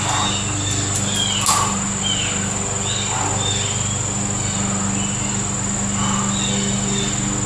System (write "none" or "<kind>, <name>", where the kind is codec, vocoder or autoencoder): none